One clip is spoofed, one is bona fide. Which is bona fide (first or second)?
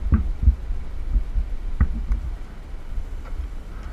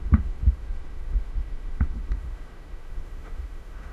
first